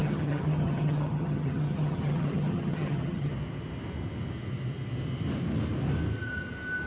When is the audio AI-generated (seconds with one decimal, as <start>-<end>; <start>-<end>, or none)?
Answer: 0.0-3.3